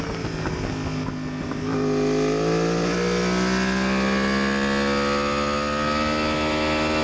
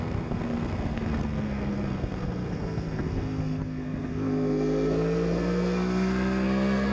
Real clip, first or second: first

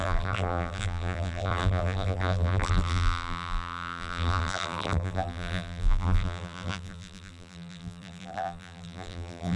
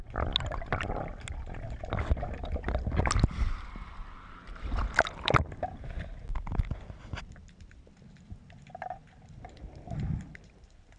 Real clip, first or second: second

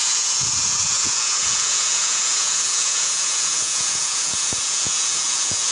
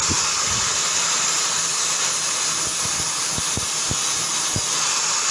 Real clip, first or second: second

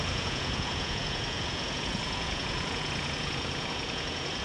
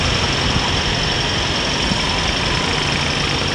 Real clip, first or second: second